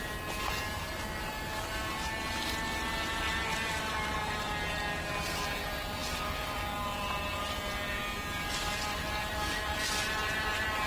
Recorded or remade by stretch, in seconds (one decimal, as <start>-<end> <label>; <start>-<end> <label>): 0.0-10.9 recorded